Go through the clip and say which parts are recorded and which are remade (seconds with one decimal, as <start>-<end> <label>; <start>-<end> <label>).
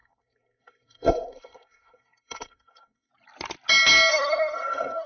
0.0-3.1 remade; 3.1-4.1 recorded; 4.1-5.1 remade